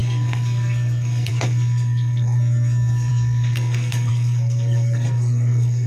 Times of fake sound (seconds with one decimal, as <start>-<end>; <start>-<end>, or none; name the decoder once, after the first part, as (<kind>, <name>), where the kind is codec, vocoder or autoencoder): 0.0-5.9 (codec, SNAC)